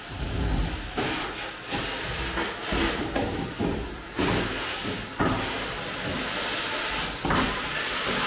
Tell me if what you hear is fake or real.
real